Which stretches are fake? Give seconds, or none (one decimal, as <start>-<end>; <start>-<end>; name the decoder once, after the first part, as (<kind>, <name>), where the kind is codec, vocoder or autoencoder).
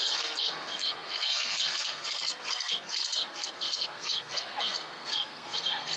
0.0-6.0 (codec, SNAC)